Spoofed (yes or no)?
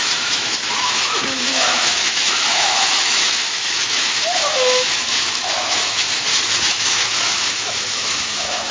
yes